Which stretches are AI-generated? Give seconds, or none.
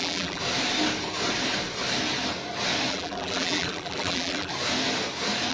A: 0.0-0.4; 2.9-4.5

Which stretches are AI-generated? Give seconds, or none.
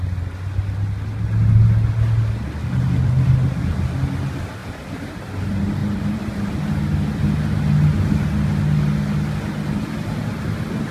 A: 4.6-5.3; 5.8-6.6